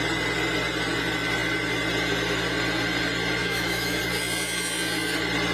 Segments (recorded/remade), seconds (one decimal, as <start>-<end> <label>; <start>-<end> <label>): 0.0-3.4 recorded; 3.4-4.0 remade; 4.0-5.5 recorded